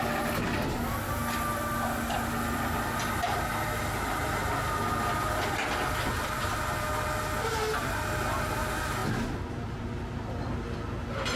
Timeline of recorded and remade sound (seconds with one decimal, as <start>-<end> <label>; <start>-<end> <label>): 0.0-11.4 recorded